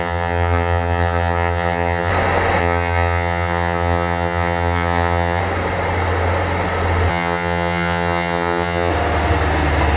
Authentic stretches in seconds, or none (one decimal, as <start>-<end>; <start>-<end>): 2.1-2.6; 5.4-7.1; 8.9-10.0